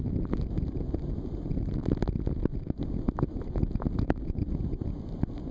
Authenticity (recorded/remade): recorded